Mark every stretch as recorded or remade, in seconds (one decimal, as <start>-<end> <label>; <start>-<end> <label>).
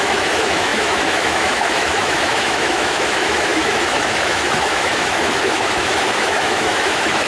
0.0-7.3 remade